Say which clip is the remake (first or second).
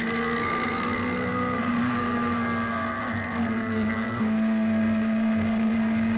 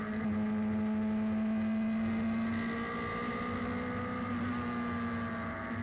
first